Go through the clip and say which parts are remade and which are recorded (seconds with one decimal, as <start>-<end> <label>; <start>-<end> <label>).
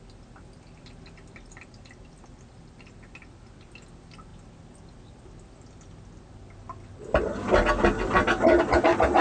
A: 0.0-9.2 recorded